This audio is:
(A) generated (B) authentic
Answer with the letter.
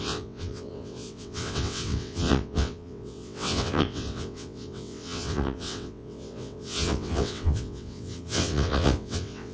A